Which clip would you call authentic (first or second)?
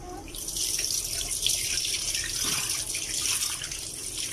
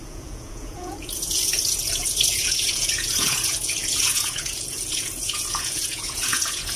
first